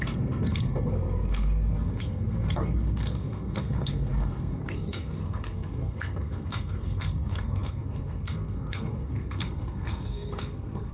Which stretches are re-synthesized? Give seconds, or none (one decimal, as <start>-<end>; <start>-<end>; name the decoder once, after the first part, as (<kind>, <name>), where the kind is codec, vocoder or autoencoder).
0.0-10.9 (codec, SNAC)